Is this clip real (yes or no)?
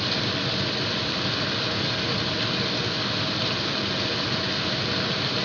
yes